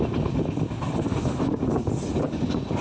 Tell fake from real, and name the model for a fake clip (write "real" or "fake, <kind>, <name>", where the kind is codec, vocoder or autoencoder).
real